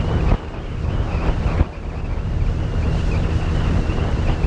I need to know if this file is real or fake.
real